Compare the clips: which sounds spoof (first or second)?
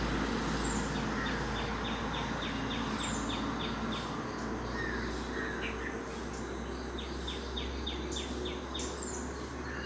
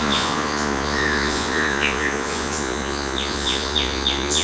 second